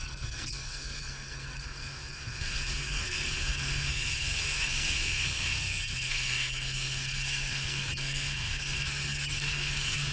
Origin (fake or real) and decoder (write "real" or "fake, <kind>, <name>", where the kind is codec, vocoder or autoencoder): fake, codec, SNAC